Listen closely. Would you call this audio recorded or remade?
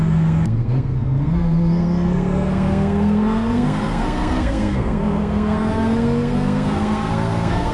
remade